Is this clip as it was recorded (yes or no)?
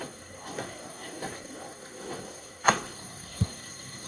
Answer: no